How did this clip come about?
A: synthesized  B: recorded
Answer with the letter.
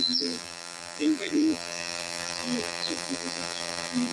A